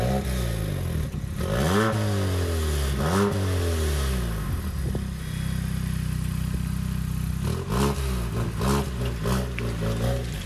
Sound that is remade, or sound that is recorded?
recorded